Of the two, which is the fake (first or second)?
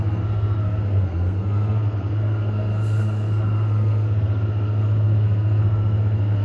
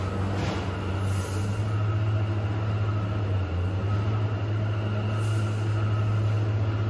first